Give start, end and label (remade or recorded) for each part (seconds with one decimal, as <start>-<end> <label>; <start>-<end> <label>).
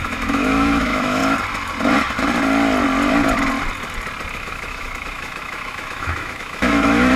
0.0-1.2 remade; 1.2-4.3 recorded; 4.3-7.2 remade